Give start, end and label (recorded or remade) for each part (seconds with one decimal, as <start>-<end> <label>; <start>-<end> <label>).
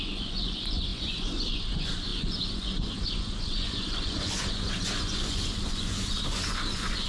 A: 0.0-7.1 remade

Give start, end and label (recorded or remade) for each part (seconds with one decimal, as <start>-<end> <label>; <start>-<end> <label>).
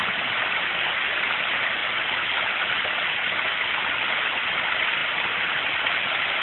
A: 0.0-6.4 recorded